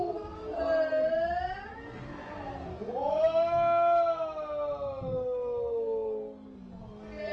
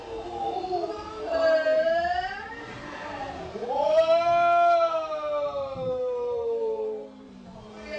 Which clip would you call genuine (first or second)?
first